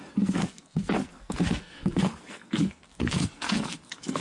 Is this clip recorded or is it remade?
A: remade